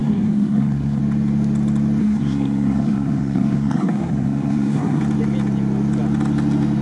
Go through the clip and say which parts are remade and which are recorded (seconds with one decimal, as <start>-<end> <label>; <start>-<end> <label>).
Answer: 0.0-1.0 remade; 1.0-2.0 recorded; 2.0-5.0 remade; 5.0-6.8 recorded